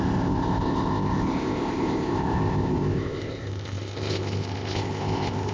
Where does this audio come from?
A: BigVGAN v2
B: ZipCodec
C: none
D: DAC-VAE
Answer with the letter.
B